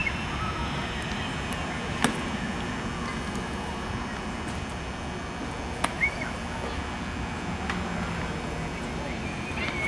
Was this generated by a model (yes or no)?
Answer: no